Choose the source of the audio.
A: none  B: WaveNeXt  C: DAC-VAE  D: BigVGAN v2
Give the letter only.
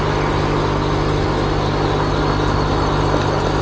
A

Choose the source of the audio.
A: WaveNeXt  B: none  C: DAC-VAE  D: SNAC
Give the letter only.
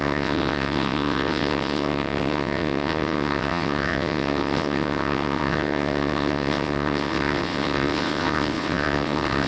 A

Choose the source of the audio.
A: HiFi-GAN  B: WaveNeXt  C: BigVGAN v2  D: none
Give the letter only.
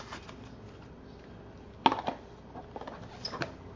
D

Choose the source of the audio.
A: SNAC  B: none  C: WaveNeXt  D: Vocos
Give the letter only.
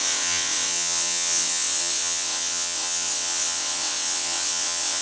C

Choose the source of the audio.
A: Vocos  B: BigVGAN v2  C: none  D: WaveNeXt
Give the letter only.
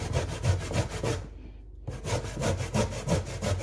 C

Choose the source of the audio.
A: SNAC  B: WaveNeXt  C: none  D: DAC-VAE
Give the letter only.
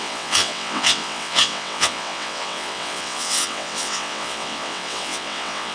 B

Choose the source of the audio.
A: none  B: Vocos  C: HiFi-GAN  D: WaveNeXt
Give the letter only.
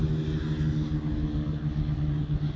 A